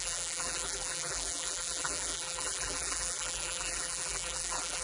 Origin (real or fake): fake